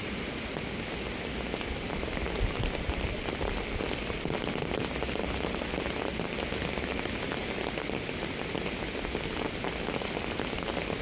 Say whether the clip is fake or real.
real